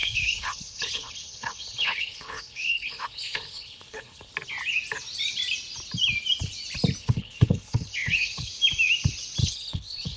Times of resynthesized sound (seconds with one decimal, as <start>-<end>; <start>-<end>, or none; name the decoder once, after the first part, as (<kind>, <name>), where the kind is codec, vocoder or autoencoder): 0.0-4.3 (codec, HILCodec); 7.0-8.5; 9.4-10.2